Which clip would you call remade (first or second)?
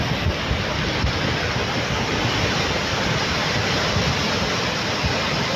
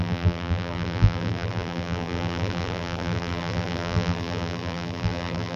second